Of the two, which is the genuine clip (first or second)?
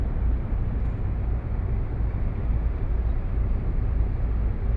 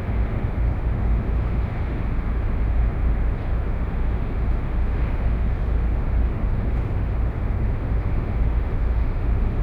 first